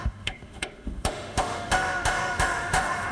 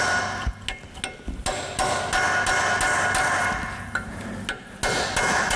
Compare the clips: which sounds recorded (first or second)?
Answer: second